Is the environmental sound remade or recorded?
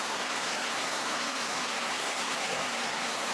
remade